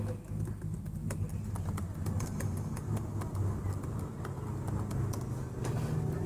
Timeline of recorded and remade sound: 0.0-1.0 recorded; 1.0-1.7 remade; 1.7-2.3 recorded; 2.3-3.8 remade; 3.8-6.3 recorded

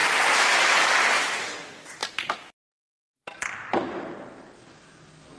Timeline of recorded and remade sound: 0.0-5.4 recorded